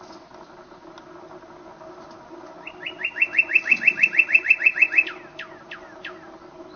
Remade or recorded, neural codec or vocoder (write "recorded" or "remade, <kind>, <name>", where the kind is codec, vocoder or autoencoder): recorded